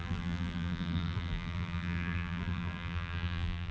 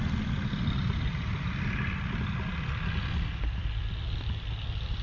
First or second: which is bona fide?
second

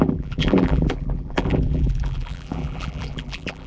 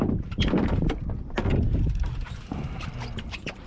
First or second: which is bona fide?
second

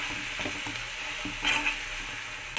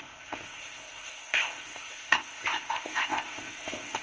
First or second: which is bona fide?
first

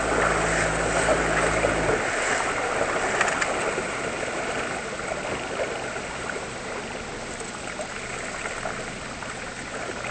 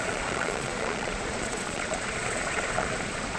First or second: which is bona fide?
first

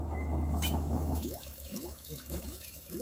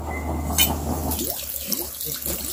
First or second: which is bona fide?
second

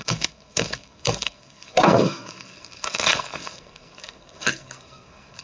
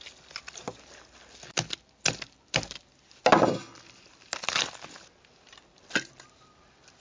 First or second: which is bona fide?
second